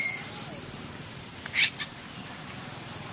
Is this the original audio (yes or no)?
yes